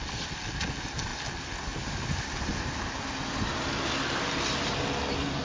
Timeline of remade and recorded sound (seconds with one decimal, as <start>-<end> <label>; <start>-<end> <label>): 0.0-5.4 recorded